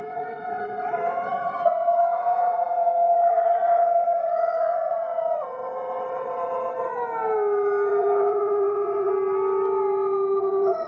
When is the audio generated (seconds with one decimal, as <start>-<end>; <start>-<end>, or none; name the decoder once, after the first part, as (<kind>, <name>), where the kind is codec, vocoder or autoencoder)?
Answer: 0.0-6.9 (vocoder, WaveNeXt); 7.9-9.1; 10.4-10.9